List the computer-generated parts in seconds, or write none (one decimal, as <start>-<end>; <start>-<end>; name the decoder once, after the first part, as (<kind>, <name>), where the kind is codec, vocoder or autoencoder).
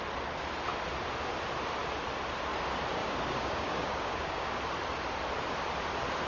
3.0-4.6 (codec, DAC)